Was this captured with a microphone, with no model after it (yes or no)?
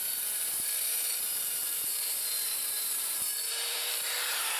no